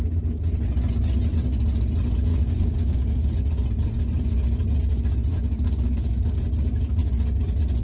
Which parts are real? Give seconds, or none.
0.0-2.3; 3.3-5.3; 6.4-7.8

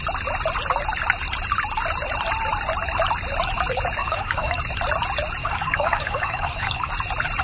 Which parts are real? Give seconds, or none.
0.0-4.0; 4.6-5.4; 6.9-7.4

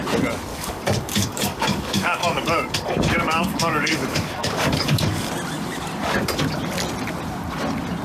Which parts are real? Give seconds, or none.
0.0-0.5; 5.3-8.0

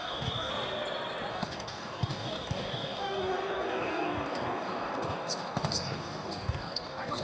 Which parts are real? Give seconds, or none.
0.5-1.3

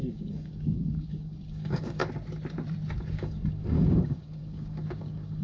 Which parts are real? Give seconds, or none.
2.0-3.0